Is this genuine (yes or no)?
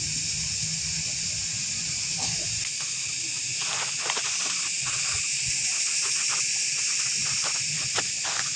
yes